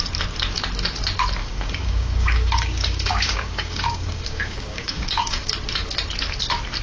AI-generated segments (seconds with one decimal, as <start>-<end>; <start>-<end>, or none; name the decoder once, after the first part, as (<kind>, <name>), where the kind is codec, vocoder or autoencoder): 1.4-5.5 (codec, DAC)